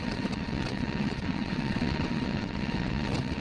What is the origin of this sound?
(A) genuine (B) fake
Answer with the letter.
B